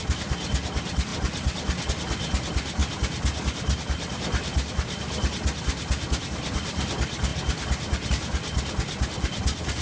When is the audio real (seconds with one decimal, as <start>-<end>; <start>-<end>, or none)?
0.0-9.8

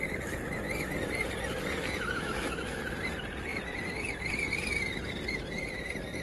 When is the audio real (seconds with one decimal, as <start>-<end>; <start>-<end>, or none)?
0.0-1.8; 2.8-6.2